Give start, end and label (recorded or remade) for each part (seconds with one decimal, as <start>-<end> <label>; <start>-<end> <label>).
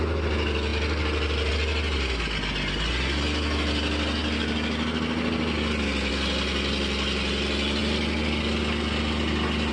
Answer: 0.0-9.7 recorded